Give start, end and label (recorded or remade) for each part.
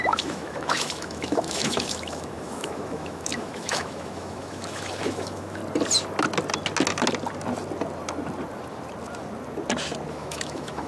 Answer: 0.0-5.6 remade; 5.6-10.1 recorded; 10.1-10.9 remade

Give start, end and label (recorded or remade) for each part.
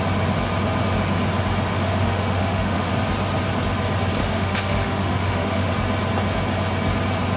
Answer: 0.0-1.7 recorded; 1.7-2.9 remade; 2.9-4.2 recorded; 4.2-5.7 remade; 5.7-7.4 recorded